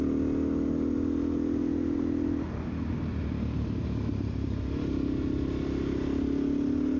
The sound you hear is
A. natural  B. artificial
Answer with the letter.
A